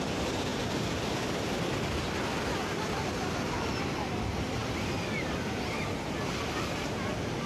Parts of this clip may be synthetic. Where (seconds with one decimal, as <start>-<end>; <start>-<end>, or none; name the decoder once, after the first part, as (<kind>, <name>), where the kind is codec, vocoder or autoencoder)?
none